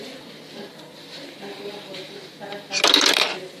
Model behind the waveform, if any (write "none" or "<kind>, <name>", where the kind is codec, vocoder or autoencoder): none